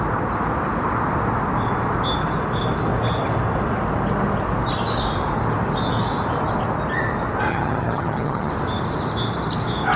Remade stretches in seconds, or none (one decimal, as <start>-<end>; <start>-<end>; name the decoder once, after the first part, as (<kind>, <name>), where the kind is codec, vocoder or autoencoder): 7.5-8.5 (vocoder, HiFi-GAN)